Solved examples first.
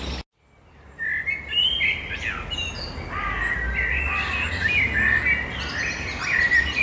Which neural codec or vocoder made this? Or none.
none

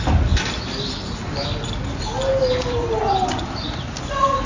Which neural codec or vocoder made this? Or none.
none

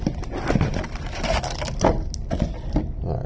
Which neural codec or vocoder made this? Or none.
none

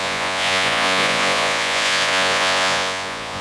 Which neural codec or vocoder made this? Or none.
vocoder, Vocos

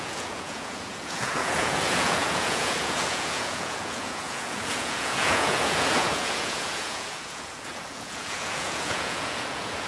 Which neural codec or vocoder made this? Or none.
vocoder, Vocos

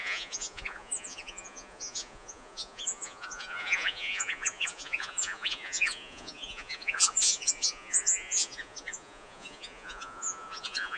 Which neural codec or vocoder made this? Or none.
vocoder, Vocos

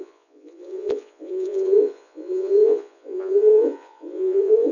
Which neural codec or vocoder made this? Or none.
vocoder, Vocos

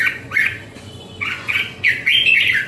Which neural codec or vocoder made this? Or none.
vocoder, Vocos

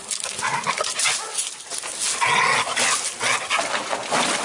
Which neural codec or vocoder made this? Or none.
none